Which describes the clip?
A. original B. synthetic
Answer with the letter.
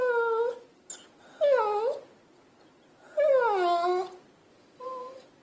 A